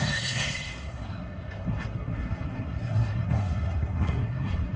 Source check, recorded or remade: remade